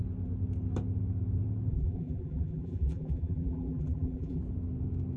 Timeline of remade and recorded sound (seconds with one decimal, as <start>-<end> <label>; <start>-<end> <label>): 0.0-1.7 recorded; 1.7-4.4 remade; 4.4-5.2 recorded